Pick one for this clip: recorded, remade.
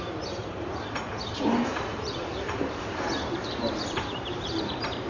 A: remade